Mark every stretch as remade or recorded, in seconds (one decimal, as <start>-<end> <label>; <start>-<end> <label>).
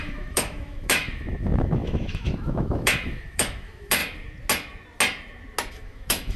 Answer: 0.0-4.0 remade; 4.0-5.7 recorded; 5.7-6.4 remade